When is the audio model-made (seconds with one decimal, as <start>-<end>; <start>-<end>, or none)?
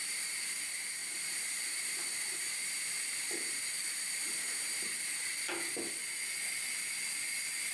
0.0-5.3